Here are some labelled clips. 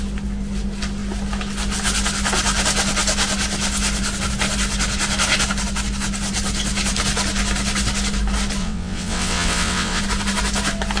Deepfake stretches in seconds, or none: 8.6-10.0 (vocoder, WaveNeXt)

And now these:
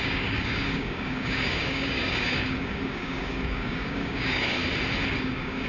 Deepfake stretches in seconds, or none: 0.0-4.6 (codec, DAC); 5.2-5.7